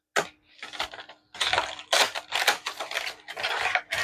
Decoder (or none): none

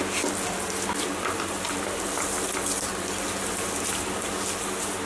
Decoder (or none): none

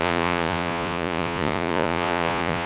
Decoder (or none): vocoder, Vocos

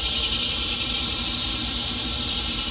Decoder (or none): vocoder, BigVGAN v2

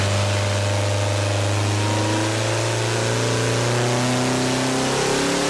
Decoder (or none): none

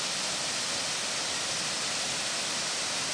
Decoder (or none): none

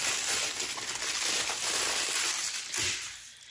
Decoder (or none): vocoder, BigVGAN v2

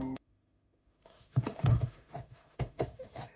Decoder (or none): autoencoder, DAC-VAE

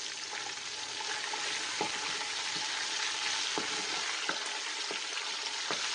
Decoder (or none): none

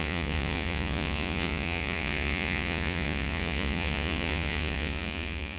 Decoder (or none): vocoder, Vocos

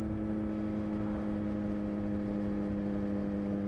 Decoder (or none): none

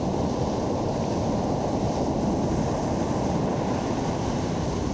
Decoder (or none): none